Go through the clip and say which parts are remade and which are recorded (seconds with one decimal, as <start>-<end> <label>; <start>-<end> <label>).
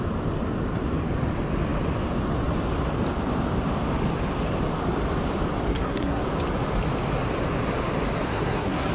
0.0-5.7 recorded; 5.7-6.2 remade; 6.2-8.3 recorded; 8.3-8.9 remade